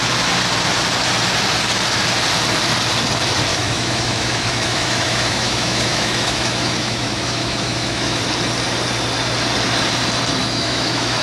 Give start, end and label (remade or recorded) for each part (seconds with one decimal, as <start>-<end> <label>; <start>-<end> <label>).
0.0-3.5 recorded; 3.5-8.2 remade; 8.2-10.4 recorded; 10.4-11.2 remade